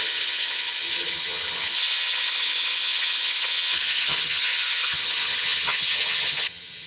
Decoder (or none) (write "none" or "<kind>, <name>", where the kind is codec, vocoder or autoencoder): vocoder, HiFi-GAN